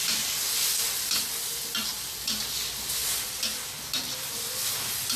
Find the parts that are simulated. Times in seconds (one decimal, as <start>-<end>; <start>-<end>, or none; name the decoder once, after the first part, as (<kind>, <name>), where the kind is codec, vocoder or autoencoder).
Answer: 1.9-2.6 (vocoder, BigVGAN v2); 3.0-4.7